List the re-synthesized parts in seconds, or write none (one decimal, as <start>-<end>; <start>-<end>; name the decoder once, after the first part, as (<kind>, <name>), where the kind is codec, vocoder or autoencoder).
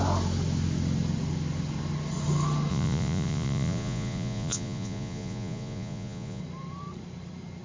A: 2.7-6.4 (vocoder, Vocos)